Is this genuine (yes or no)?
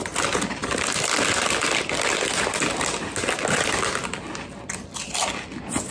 yes